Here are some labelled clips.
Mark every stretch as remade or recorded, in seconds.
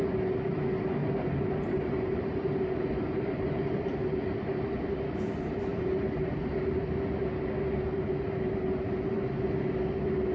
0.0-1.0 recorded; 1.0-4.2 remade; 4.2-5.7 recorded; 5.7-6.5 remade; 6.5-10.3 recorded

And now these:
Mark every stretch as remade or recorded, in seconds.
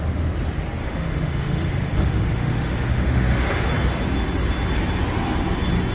0.0-0.8 recorded; 0.8-3.7 remade; 3.7-5.9 recorded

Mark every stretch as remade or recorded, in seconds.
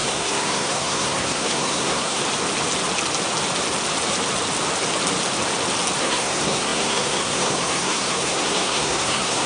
0.0-2.2 remade; 2.2-6.0 recorded; 6.0-9.5 remade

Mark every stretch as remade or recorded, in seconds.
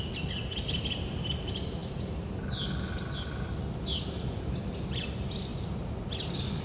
0.0-6.6 recorded